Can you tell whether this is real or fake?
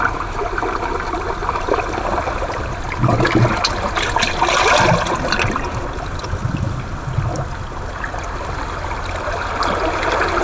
real